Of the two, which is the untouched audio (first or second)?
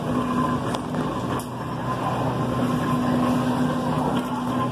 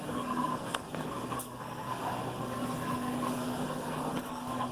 first